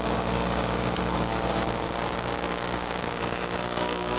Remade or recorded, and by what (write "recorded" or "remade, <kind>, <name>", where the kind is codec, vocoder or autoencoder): remade, codec, DAC